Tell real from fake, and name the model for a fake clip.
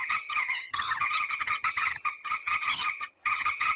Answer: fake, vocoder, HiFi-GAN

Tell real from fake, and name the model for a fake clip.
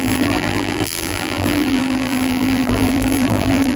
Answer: fake, vocoder, BigVGAN v2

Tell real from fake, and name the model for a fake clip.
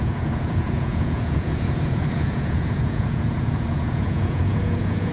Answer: fake, vocoder, Vocos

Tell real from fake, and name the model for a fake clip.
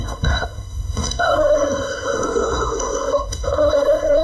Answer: fake, codec, SNAC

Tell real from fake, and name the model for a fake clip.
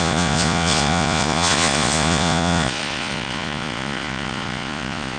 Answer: fake, vocoder, Vocos